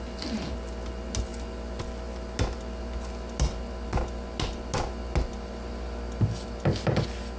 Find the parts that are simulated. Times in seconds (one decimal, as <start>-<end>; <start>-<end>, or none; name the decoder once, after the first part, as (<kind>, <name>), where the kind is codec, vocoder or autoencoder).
none